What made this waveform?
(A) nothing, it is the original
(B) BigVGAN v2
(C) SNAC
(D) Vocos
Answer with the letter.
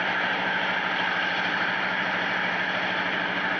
A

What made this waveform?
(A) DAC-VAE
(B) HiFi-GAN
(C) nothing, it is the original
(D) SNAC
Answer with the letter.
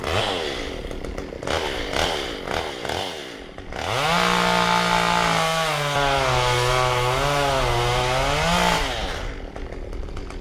C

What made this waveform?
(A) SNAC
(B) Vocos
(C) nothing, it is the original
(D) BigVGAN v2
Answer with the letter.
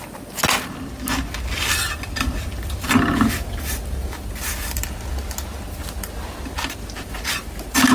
C